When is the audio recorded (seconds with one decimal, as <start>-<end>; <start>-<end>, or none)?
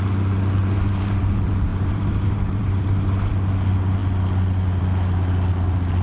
0.0-0.6; 1.2-1.7; 3.3-6.0